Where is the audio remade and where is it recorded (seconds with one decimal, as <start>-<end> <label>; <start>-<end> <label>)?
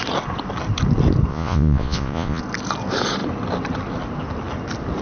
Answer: 0.0-1.3 recorded; 1.3-2.4 remade; 2.4-5.0 recorded